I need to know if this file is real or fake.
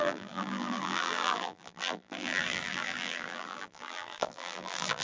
fake